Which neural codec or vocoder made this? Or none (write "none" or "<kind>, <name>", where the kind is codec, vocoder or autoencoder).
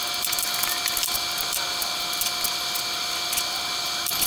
none